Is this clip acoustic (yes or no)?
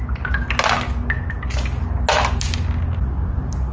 yes